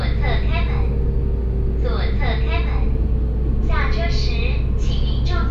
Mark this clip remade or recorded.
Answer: recorded